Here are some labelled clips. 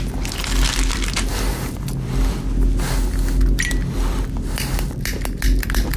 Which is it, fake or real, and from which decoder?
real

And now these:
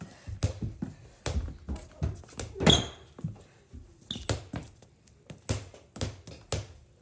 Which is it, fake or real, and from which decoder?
real